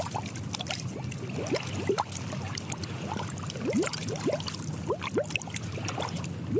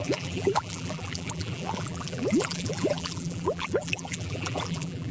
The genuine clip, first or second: first